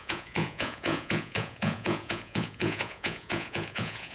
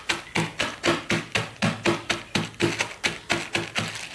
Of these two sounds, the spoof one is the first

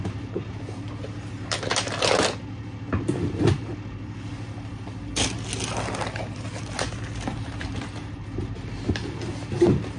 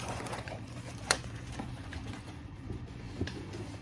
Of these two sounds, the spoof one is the second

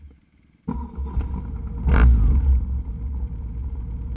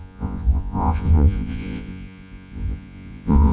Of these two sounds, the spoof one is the second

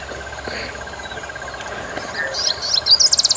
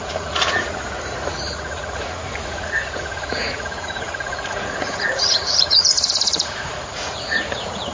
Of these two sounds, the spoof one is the second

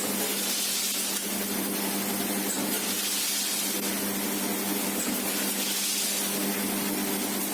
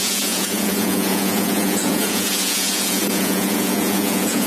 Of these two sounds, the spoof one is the second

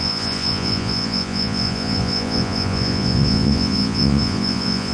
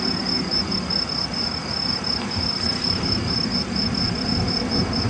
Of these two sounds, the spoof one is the first